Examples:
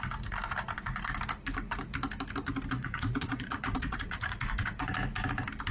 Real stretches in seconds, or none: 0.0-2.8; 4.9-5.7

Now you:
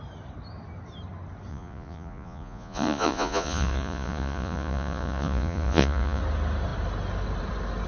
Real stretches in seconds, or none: 0.0-1.5; 6.2-7.9

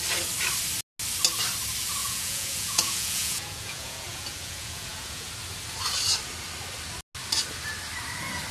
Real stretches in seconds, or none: 0.0-2.0; 5.3-8.5

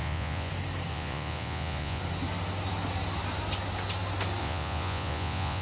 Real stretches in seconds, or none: 0.5-0.9; 2.0-4.4

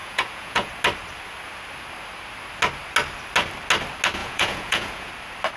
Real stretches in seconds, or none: 0.7-4.2; 5.1-5.6

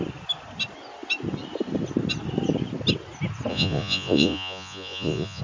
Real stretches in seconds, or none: 0.0-3.5

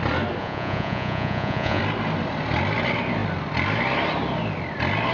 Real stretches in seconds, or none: 0.0-0.4; 1.8-5.1

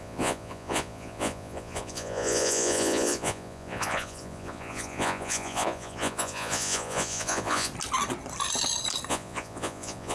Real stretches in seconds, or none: 7.7-9.1